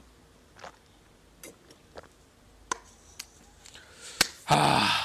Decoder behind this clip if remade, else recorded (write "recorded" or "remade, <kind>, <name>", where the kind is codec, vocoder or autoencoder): recorded